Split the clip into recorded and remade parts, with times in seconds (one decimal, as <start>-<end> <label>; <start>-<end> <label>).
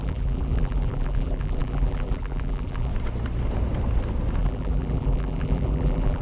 0.0-2.9 remade; 2.9-4.4 recorded; 4.4-6.2 remade